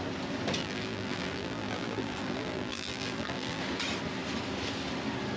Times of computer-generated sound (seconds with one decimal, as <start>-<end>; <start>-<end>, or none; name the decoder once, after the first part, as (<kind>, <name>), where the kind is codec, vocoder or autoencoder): 0.6-3.6 (vocoder, BigVGAN v2)